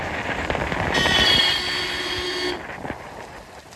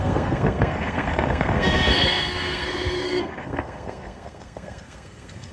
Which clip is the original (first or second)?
first